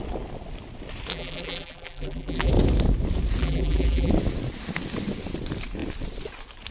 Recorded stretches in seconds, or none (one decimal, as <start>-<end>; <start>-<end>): 0.0-1.1; 2.5-3.4; 4.1-6.7